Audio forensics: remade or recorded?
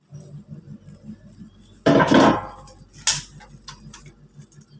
recorded